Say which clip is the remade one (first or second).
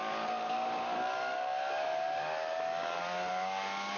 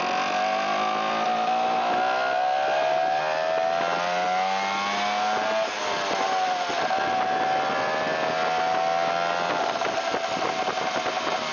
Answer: first